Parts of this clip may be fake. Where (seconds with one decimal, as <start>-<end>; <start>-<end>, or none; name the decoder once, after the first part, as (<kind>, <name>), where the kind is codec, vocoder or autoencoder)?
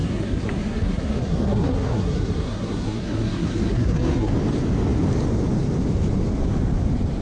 0.0-4.3 (codec, SNAC)